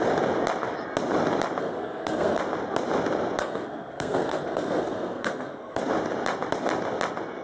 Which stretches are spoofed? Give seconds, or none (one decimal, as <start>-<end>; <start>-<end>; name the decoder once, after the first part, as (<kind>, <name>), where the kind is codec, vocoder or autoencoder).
1.6-2.4 (codec, SNAC); 3.4-5.8

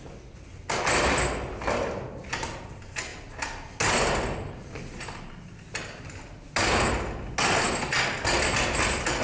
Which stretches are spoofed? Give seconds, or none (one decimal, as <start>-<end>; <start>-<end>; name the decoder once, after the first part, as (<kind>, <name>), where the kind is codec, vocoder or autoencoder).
none

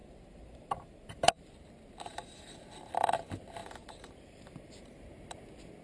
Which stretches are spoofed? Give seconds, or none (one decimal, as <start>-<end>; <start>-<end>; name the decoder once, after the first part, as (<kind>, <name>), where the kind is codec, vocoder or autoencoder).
0.0-1.5 (vocoder, BigVGAN v2); 2.1-2.6; 3.6-5.0

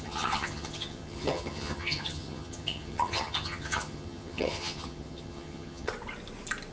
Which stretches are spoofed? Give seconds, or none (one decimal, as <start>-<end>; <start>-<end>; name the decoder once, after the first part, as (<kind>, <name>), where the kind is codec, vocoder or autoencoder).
0.0-5.9 (vocoder, HiFi-GAN)